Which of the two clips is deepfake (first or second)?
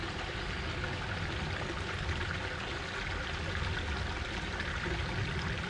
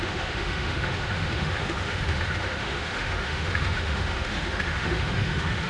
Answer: second